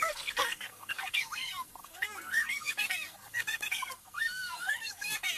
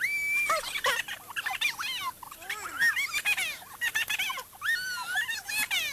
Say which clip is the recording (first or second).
second